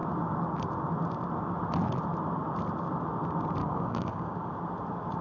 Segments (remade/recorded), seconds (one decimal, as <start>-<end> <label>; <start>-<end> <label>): 0.0-3.6 recorded; 3.6-4.5 remade; 4.5-5.2 recorded